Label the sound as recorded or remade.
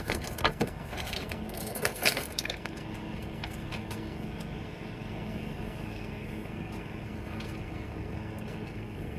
remade